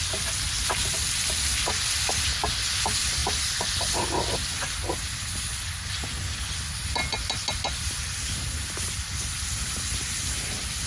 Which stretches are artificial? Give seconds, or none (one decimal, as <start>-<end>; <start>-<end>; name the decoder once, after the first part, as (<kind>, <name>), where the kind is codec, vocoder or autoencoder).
3.2-4.7 (vocoder, BigVGAN v2)